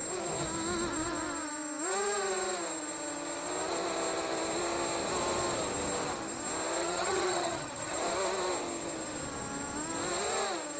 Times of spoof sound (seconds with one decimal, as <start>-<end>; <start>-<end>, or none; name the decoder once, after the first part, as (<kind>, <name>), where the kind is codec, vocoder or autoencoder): 6.8-8.0 (vocoder, HiFi-GAN)